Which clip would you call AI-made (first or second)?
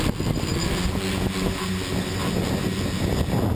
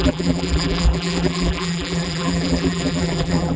second